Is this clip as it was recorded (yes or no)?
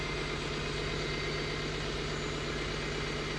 yes